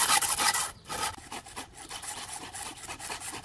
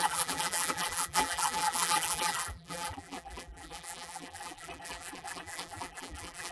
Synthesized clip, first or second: second